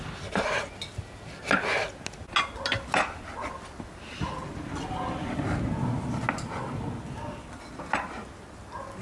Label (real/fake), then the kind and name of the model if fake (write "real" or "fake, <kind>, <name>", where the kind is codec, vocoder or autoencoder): real